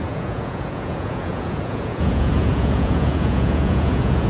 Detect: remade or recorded remade